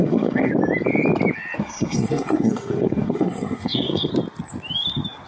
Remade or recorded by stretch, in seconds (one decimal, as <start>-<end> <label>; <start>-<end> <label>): 0.0-0.5 remade; 0.5-1.6 recorded; 1.6-4.1 remade; 4.1-5.3 recorded